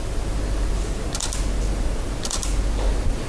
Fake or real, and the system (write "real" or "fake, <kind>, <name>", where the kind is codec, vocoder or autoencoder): real